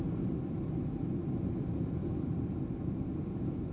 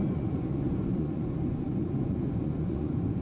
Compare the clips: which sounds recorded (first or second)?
first